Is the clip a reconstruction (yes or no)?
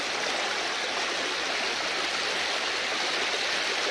no